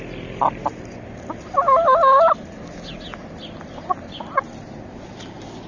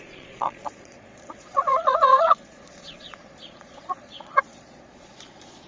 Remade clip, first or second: second